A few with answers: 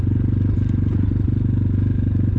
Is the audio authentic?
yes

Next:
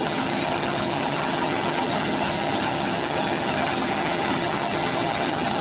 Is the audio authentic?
no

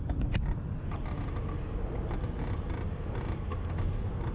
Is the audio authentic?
yes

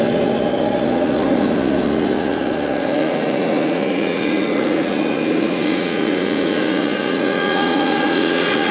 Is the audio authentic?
no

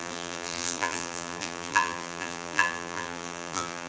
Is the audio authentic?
no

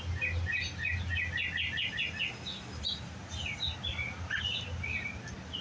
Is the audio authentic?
yes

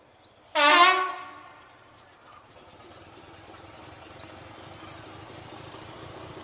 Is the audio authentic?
yes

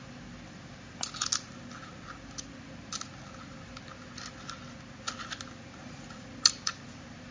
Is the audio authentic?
yes